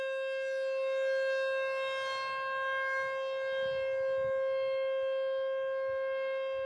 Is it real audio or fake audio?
real